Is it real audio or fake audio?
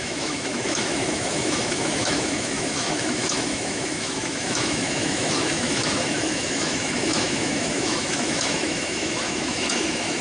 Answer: fake